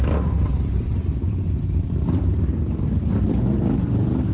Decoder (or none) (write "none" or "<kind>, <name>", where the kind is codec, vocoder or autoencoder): vocoder, BigVGAN v2